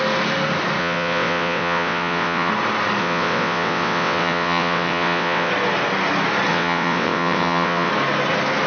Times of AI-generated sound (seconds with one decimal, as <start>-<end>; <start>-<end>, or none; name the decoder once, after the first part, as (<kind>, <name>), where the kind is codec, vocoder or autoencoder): 0.8-2.5 (vocoder, WaveNeXt); 3.0-5.5; 6.5-7.9